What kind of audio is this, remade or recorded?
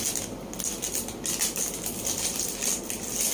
recorded